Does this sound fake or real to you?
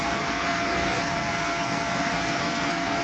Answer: fake